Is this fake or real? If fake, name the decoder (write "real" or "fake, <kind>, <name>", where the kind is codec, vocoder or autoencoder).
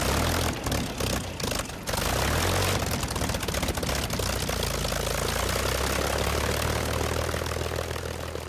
real